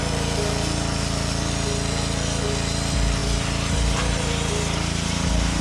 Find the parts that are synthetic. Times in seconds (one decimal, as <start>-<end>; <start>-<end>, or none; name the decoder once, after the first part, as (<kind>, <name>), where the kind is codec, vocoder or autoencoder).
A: 3.2-5.6 (vocoder, BigVGAN v2)